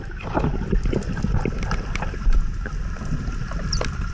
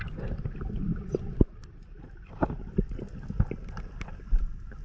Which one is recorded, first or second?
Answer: second